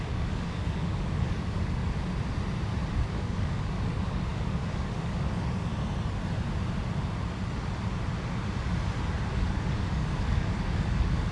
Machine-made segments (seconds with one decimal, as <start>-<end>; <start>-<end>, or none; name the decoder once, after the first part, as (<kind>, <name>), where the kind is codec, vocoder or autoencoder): 0.0-1.8 (codec, DAC); 3.0-5.7; 9.3-11.3